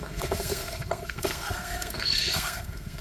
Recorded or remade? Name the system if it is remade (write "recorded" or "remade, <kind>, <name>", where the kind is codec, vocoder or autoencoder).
remade, codec, SNAC